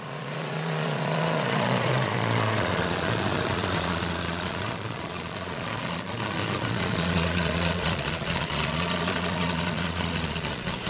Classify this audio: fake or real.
fake